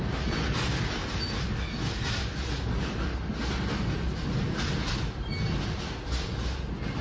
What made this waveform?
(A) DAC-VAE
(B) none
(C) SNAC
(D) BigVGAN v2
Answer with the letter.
B